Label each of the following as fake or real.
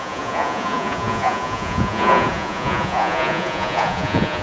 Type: fake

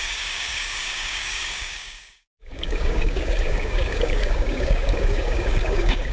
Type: fake